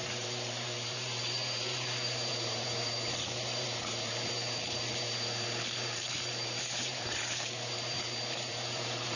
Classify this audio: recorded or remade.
remade